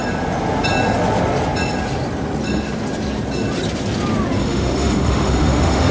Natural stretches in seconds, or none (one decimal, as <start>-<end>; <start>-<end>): 0.0-4.4